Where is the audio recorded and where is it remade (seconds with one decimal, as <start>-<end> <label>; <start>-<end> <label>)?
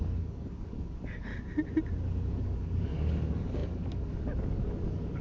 0.0-1.3 remade; 1.3-2.3 recorded; 2.3-5.2 remade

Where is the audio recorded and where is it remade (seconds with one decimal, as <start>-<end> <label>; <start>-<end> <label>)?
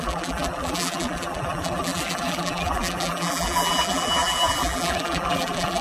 0.0-5.8 remade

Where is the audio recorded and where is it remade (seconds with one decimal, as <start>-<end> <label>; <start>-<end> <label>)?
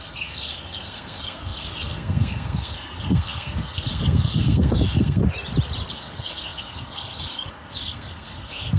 0.0-5.2 remade; 5.2-5.9 recorded; 5.9-8.8 remade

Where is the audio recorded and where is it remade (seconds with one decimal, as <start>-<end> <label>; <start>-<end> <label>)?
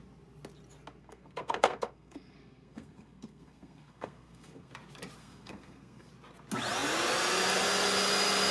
0.0-1.0 recorded; 1.0-4.7 remade; 4.7-5.2 recorded; 5.2-6.1 remade; 6.1-8.5 recorded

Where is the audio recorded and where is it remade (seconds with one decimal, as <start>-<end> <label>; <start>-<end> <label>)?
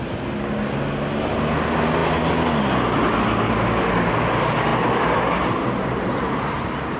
0.0-4.7 recorded; 4.7-7.0 remade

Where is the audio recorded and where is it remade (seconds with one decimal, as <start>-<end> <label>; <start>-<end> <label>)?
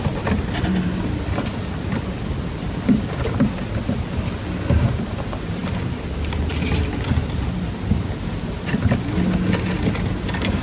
0.0-10.6 recorded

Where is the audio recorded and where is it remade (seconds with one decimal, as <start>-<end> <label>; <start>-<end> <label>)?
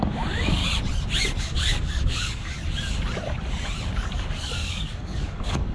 0.0-0.6 remade; 0.6-1.4 recorded; 1.4-2.6 remade; 2.6-4.1 recorded; 4.1-5.7 remade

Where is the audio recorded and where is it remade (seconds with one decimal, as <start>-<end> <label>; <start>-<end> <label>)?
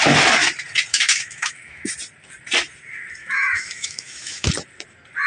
0.0-0.9 recorded; 0.9-1.9 remade; 1.9-3.2 recorded; 3.2-4.5 remade; 4.5-5.3 recorded